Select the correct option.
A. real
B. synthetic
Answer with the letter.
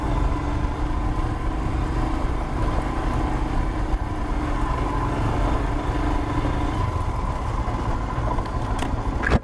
A